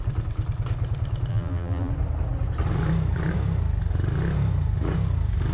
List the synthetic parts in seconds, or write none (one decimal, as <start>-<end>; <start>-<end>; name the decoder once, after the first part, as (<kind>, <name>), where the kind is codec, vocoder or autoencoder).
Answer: 1.3-1.9 (vocoder, BigVGAN v2)